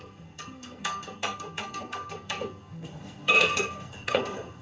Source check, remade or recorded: remade